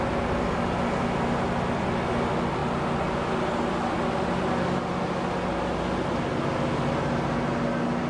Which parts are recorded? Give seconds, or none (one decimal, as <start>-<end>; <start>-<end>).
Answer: 0.0-8.1